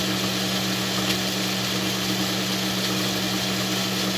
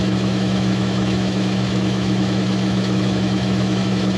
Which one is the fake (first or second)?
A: second